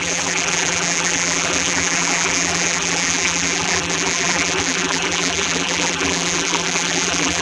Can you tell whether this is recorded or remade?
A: remade